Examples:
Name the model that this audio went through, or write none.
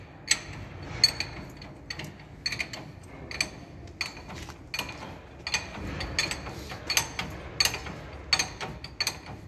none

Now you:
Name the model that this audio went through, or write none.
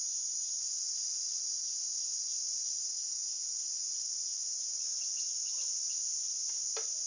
none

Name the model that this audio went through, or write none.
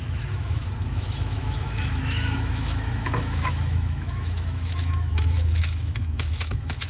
autoencoder, DAC-VAE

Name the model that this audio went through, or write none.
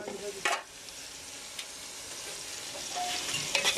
none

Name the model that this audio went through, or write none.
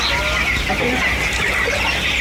none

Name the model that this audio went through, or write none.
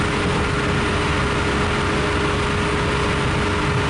none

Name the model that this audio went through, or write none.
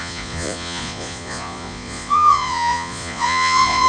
vocoder, Vocos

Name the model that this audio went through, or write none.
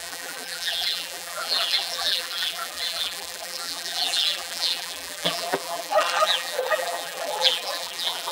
vocoder, BigVGAN v2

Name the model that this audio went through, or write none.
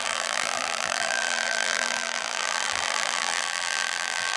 vocoder, BigVGAN v2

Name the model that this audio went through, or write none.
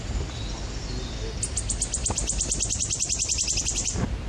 none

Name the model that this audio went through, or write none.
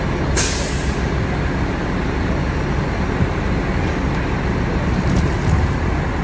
none